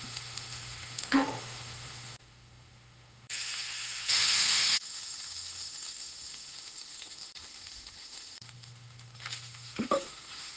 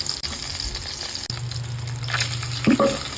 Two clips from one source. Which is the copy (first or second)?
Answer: first